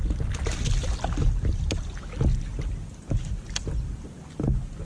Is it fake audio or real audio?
real